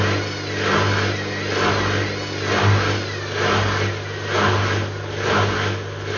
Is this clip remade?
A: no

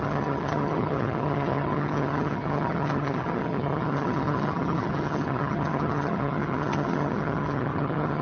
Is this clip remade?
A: yes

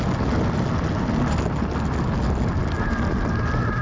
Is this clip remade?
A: no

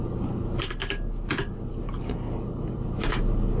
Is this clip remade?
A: no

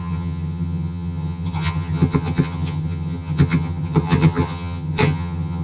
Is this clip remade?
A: yes